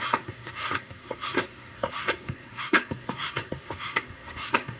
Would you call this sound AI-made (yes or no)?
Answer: yes